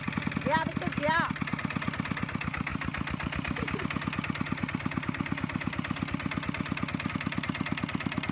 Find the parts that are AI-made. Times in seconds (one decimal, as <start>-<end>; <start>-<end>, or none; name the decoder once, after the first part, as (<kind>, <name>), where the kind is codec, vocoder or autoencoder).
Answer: none

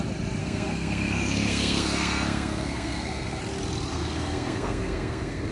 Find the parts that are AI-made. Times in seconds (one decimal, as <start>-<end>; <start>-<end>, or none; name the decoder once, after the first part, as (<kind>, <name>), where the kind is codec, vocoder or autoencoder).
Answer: 0.4-3.4 (codec, SNAC); 3.9-5.5

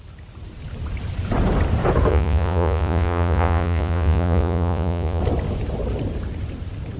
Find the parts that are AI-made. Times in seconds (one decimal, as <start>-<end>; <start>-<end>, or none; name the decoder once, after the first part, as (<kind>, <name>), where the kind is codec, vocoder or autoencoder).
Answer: 2.1-5.2 (vocoder, Vocos)

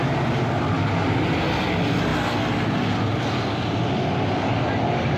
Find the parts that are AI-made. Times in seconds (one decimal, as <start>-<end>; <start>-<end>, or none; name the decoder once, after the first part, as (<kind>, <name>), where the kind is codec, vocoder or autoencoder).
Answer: none